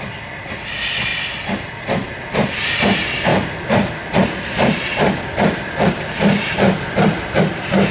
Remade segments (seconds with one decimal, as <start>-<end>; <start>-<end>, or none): 3.3-7.4

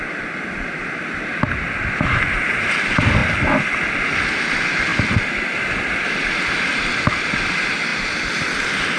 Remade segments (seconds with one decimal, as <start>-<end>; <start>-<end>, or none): 7.9-8.5